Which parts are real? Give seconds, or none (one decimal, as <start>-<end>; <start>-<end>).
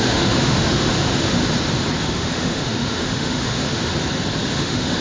1.4-2.0; 3.9-4.5